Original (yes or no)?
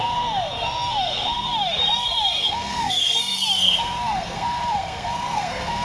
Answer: no